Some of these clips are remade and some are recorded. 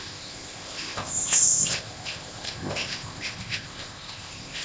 remade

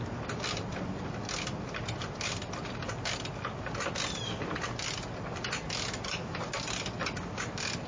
recorded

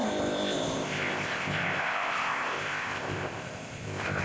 remade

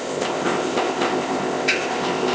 remade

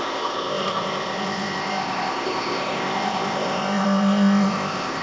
remade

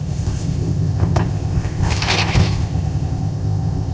remade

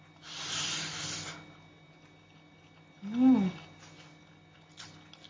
recorded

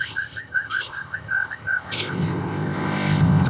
remade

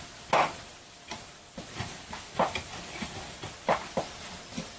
recorded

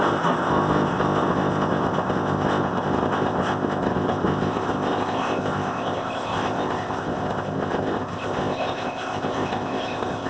remade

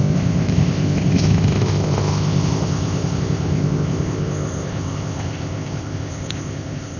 remade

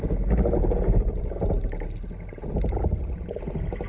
recorded